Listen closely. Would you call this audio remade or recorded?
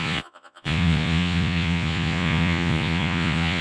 remade